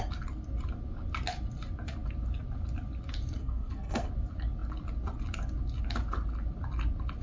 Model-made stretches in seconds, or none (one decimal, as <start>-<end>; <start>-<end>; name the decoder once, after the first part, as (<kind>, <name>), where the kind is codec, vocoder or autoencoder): 3.4-4.1 (codec, SNAC)